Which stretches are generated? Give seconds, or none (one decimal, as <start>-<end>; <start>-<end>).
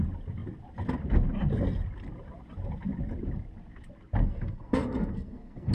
4.2-5.7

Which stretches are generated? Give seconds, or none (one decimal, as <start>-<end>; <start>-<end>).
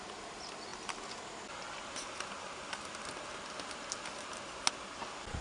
none